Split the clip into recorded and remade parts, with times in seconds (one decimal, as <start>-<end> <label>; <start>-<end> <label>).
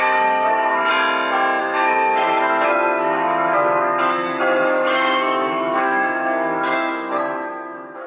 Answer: 0.0-0.9 remade; 0.9-1.6 recorded; 1.6-8.1 remade